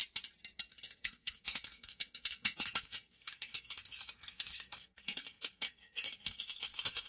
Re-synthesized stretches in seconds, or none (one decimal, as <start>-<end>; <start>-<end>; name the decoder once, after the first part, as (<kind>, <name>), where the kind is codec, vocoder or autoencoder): 0.7-7.1 (codec, SNAC)